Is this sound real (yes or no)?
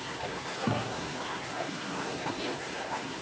no